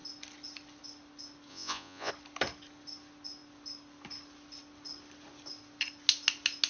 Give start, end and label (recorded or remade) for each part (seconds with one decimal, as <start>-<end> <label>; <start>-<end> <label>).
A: 0.0-1.5 recorded; 1.5-2.1 remade; 2.1-6.7 recorded